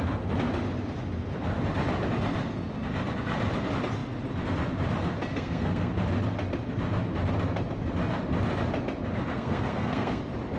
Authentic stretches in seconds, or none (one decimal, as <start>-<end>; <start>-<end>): 0.0-5.3; 5.9-9.3; 10.2-10.6